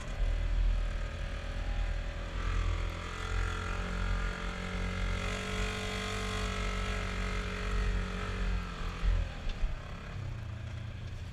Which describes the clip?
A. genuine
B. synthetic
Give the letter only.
A